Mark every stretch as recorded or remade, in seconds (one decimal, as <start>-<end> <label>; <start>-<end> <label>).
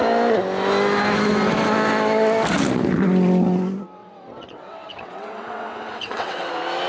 0.0-4.0 recorded; 4.0-6.5 remade; 6.5-6.9 recorded